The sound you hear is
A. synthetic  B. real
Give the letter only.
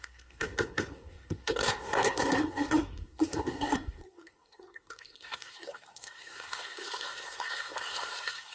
A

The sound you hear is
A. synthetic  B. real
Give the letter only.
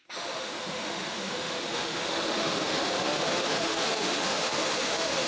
A